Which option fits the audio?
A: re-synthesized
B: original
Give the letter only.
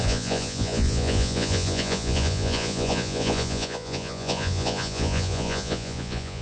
A